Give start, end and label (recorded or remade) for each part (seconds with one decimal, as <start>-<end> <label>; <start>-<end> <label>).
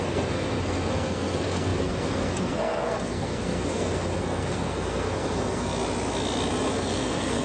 0.0-5.7 remade; 5.7-6.7 recorded; 6.7-7.4 remade